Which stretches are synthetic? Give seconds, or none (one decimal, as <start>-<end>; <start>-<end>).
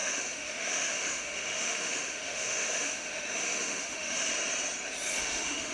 0.0-4.3; 5.2-5.7